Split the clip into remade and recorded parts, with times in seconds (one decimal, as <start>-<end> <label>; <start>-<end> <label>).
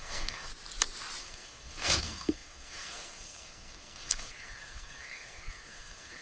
0.0-0.5 remade; 0.5-1.2 recorded; 1.2-6.2 remade